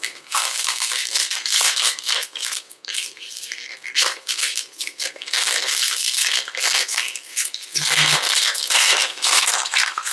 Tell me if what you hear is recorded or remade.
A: remade